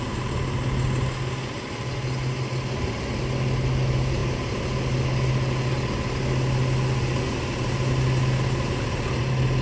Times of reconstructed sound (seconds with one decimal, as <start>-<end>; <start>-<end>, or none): none